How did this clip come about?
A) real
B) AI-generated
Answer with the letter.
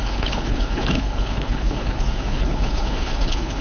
B